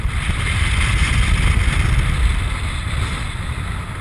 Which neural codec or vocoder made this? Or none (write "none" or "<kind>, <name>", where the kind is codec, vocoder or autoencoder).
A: none